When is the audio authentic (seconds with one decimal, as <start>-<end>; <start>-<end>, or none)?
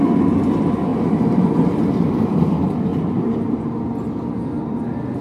0.0-0.9; 2.5-2.9; 3.6-5.2